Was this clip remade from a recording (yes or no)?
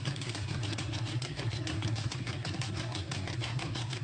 yes